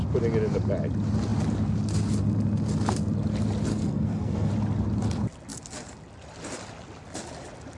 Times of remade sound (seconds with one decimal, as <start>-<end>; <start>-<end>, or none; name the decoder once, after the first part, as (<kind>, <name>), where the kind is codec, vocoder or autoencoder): 3.7-4.5 (codec, SNAC)